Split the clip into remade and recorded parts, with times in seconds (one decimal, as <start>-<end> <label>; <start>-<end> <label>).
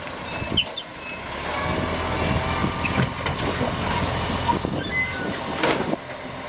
0.0-6.5 recorded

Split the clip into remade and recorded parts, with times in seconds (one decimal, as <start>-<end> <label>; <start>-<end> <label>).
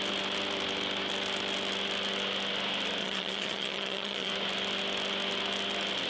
0.0-3.0 recorded; 3.0-4.3 remade; 4.3-6.1 recorded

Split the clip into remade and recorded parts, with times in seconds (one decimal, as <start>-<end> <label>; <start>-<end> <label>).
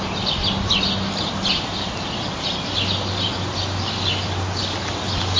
0.0-5.4 recorded